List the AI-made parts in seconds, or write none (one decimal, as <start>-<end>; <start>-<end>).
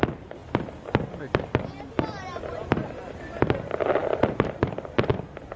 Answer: 2.3-3.1; 4.0-5.1